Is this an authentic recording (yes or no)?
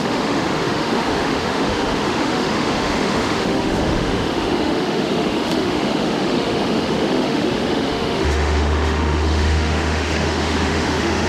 no